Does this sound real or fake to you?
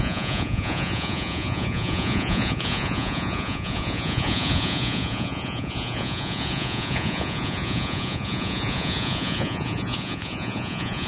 fake